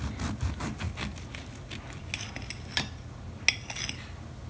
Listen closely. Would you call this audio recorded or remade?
recorded